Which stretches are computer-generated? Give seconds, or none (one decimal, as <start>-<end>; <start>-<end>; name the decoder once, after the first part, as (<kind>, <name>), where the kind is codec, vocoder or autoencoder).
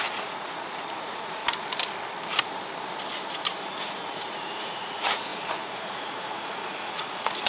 0.0-1.4 (vocoder, Vocos); 3.6-7.5